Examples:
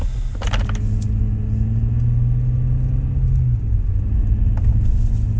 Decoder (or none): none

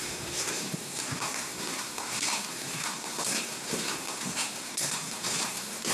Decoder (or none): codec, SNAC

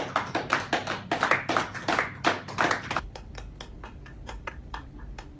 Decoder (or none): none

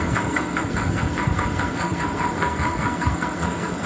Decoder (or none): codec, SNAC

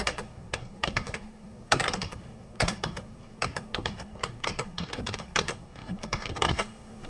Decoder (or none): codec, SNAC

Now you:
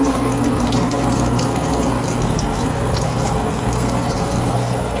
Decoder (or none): codec, SNAC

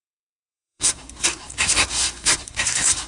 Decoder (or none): codec, SNAC